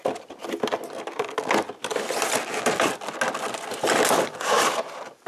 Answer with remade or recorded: recorded